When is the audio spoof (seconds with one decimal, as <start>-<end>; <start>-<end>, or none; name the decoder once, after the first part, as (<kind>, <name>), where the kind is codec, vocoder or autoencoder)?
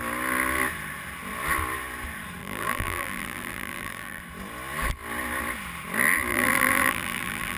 2.4-4.2 (vocoder, BigVGAN v2); 6.3-7.6